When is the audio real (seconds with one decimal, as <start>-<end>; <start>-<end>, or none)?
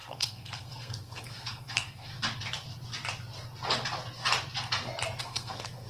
2.1-5.2